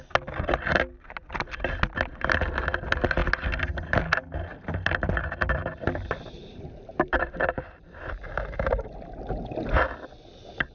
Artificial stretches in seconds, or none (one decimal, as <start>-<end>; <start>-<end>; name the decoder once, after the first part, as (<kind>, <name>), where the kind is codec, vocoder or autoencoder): 6.5-8.9 (vocoder, BigVGAN v2)